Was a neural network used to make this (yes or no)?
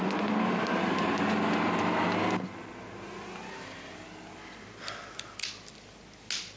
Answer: no